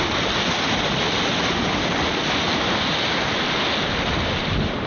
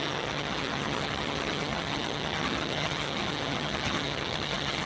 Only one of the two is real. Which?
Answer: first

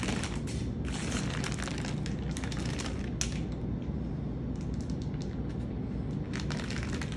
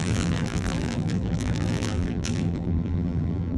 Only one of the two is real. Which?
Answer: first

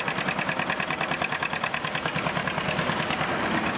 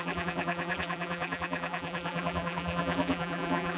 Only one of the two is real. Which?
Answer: first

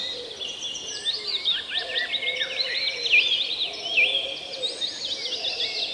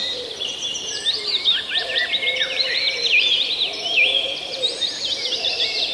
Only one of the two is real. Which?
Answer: first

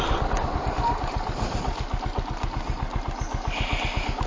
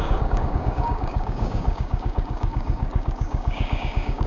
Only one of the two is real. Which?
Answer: first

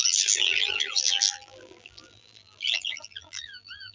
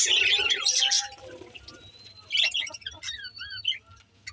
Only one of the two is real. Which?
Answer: second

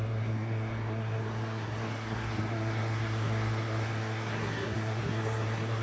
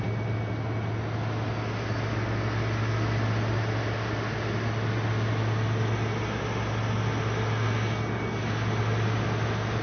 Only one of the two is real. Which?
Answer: second